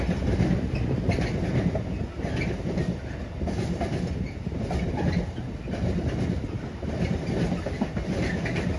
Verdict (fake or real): real